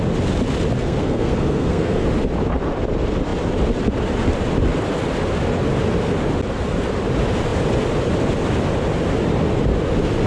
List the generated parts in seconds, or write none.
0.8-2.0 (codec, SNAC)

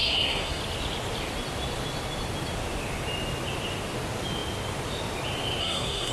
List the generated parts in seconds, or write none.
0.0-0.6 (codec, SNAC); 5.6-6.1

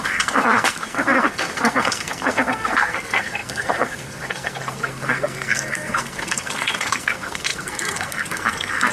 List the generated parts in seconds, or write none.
0.0-8.9 (codec, SNAC)

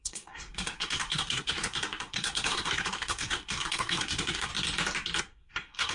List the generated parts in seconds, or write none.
0.0-4.5 (codec, SNAC); 5.2-5.9

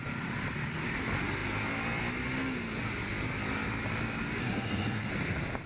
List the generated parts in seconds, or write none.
4.4-5.1 (codec, SNAC)

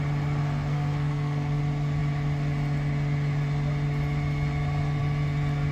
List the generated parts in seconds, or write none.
0.4-1.6 (codec, SNAC)

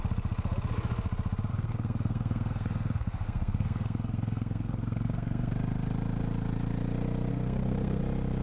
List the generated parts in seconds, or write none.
1.5-5.5 (codec, SNAC); 7.3-8.0

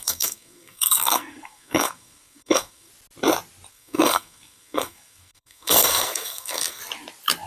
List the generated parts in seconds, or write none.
0.0-2.9 (codec, SNAC); 3.7-6.8